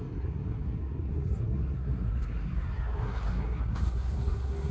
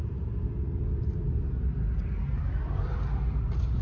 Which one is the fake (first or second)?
first